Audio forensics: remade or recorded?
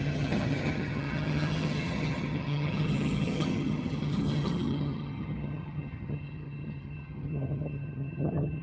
remade